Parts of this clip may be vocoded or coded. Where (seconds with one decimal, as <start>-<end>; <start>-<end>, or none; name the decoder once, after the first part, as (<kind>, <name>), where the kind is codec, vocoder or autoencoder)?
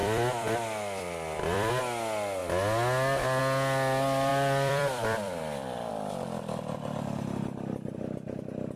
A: 0.0-1.7 (vocoder, BigVGAN v2); 4.3-5.9